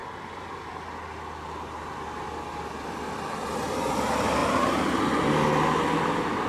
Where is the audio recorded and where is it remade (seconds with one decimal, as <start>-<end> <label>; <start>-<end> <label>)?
0.0-6.5 recorded